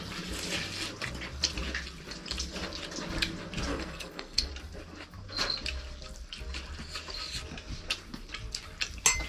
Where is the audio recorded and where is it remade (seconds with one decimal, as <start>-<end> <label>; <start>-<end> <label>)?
0.0-3.7 recorded; 3.7-4.5 remade; 4.5-9.3 recorded